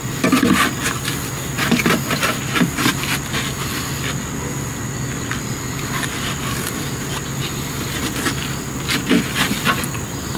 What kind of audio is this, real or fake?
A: real